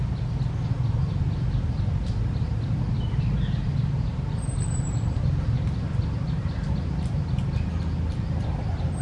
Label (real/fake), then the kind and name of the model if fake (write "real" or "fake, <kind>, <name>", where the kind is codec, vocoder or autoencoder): real